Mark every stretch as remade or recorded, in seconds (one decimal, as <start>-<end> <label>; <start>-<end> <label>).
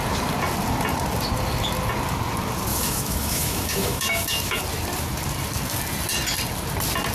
0.0-2.7 recorded; 2.7-4.6 remade; 4.6-7.1 recorded